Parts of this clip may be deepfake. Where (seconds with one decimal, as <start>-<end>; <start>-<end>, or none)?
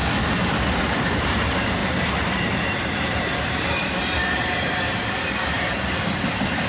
0.8-6.7